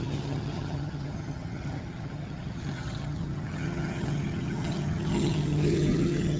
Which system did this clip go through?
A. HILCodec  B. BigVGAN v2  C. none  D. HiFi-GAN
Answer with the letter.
D